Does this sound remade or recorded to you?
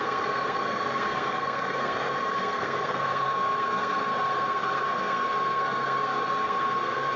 remade